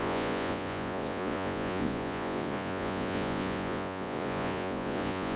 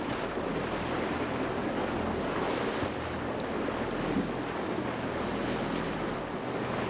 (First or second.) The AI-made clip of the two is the first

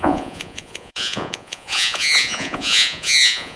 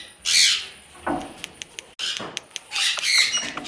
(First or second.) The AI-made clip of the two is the first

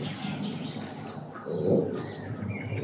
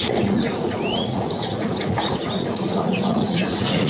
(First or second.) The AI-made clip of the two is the second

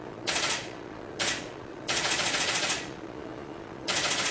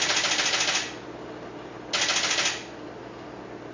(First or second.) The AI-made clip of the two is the first